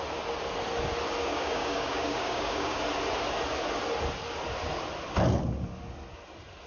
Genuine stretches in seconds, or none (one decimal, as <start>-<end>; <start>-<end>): 0.0-1.2; 2.8-6.7